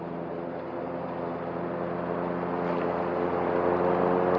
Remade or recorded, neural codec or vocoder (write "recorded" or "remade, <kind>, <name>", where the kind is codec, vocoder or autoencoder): recorded